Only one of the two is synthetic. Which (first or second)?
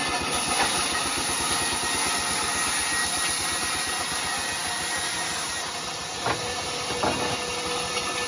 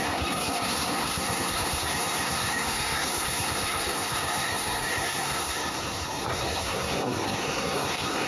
second